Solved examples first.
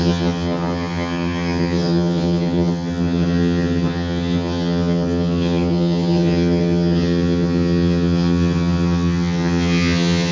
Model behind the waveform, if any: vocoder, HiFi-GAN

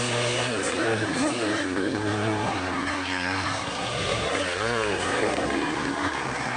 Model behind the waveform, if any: codec, SNAC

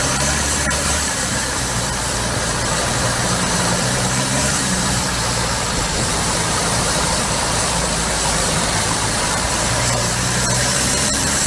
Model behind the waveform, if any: vocoder, BigVGAN v2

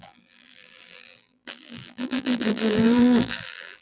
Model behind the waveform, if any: vocoder, BigVGAN v2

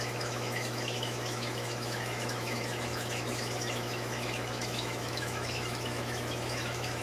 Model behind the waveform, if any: autoencoder, DAC-VAE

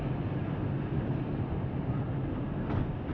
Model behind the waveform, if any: none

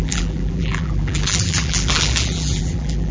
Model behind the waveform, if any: vocoder, BigVGAN v2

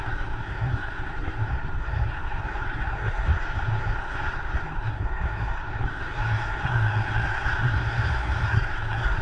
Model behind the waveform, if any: codec, SNAC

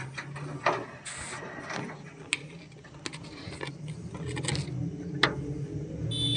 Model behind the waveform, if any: none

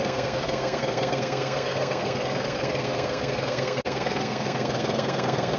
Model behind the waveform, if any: codec, SNAC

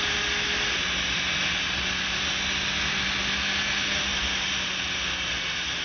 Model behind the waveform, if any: none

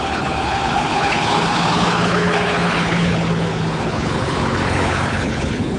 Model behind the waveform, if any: codec, HILCodec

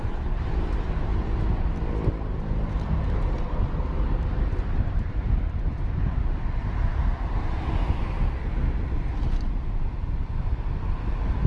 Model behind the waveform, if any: none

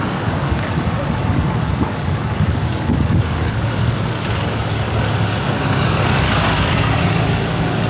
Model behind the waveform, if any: codec, DAC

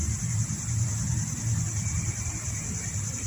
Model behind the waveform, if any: vocoder, BigVGAN v2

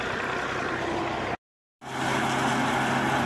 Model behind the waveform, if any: none